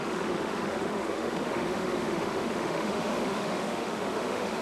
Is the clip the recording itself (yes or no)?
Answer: no